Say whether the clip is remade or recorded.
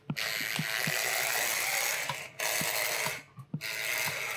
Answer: recorded